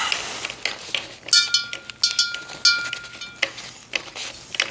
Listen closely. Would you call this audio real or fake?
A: real